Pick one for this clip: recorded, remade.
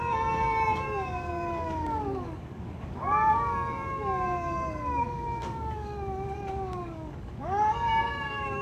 remade